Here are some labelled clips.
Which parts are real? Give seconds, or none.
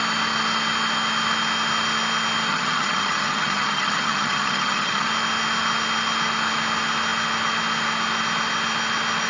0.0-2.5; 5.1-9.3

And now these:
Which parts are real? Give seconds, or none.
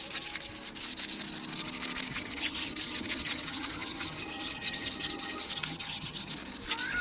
0.0-2.1; 6.3-7.0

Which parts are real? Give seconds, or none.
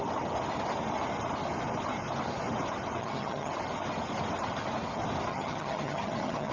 0.0-3.0; 3.5-5.3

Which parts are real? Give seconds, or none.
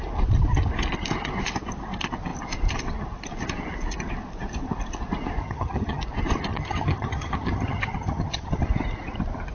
0.0-5.4; 6.0-6.5; 8.6-9.5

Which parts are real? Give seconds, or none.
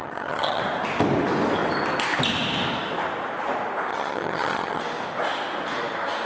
0.6-3.9; 4.8-6.3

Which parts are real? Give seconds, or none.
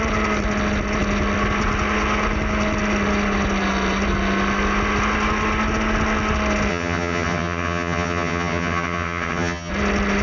0.0-6.7; 9.7-10.2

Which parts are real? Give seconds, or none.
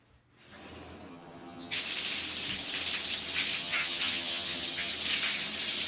0.0-1.1; 1.8-3.6; 4.9-5.9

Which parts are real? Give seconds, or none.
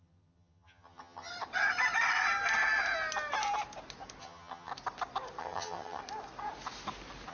1.3-4.2; 4.7-5.4; 6.0-7.3